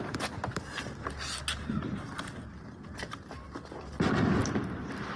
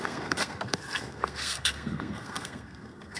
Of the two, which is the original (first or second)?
first